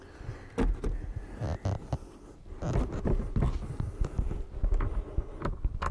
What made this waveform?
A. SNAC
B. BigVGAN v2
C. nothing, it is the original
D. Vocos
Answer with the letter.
C